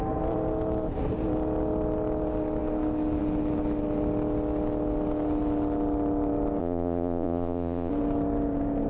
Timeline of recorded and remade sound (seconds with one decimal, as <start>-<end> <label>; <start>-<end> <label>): 0.0-6.6 recorded; 6.6-7.9 remade; 7.9-8.9 recorded

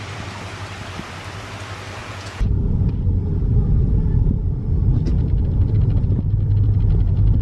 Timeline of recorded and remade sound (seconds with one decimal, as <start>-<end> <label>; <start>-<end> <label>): 0.0-2.0 recorded; 2.0-2.9 remade; 2.9-7.4 recorded

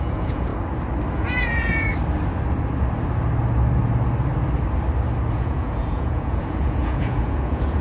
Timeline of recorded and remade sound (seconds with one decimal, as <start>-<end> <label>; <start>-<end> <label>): 0.0-0.5 remade; 0.5-1.1 recorded; 1.1-1.9 remade; 1.9-5.3 recorded; 5.3-7.8 remade

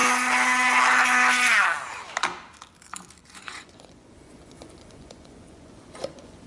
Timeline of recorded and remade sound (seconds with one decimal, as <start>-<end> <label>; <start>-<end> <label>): 0.0-3.2 recorded; 3.2-6.5 remade

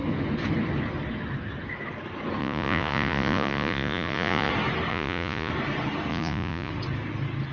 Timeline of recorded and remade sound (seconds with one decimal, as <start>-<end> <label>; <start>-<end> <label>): 0.0-2.4 recorded; 2.4-4.5 remade; 4.5-4.9 recorded; 4.9-5.5 remade; 5.5-6.1 recorded; 6.1-6.7 remade; 6.7-7.5 recorded

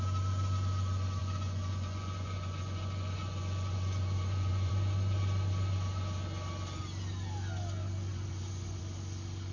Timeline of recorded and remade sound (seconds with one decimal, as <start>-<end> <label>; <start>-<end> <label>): 0.0-1.2 recorded; 1.2-4.7 remade; 4.7-8.1 recorded; 8.1-8.8 remade; 8.8-9.5 recorded